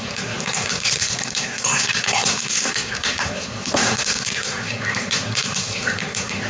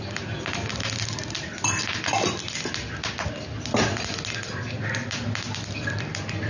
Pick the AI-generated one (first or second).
first